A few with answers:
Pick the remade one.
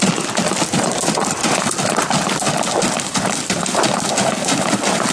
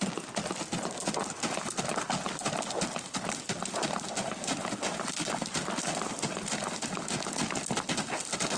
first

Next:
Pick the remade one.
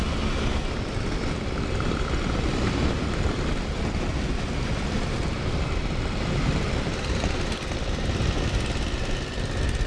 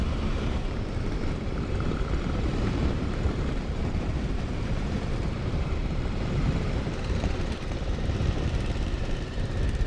second